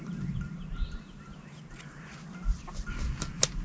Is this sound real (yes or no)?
yes